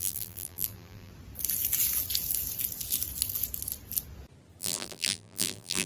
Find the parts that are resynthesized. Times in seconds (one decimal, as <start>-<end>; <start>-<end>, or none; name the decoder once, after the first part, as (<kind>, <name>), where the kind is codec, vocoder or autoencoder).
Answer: 0.0-1.1 (vocoder, BigVGAN v2); 4.6-5.9